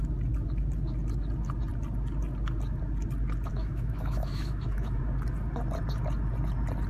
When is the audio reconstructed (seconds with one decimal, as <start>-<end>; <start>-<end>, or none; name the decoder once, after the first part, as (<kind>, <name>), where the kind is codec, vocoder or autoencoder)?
3.5-5.0 (autoencoder, DAC-VAE)